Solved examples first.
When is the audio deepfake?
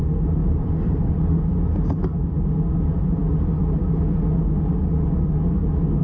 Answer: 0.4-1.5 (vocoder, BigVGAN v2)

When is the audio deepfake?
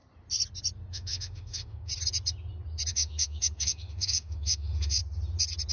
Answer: 0.9-1.9 (autoencoder, DAC-VAE); 2.9-5.0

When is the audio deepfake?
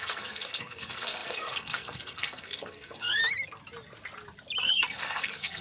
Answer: 0.0-3.2 (codec, SNAC); 4.6-5.6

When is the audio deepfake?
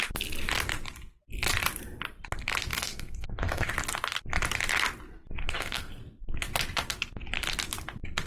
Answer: 2.7-3.7 (codec, SNAC); 5.4-6.0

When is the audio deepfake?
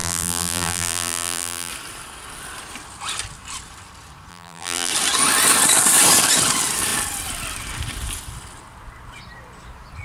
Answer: 0.0-1.7 (vocoder, BigVGAN v2); 4.3-4.9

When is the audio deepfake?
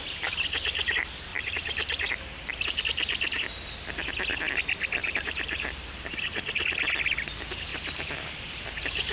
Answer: 1.3-2.8 (vocoder, BigVGAN v2); 5.0-6.2; 7.7-8.6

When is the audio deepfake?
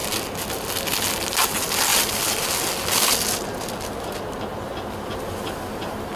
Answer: none